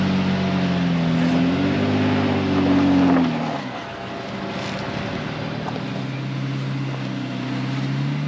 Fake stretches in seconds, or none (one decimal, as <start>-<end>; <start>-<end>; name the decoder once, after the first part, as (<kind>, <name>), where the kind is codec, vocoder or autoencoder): 3.6-4.1 (codec, SNAC)